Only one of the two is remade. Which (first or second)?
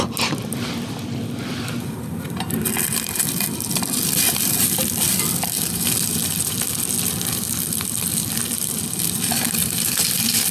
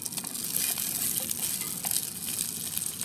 first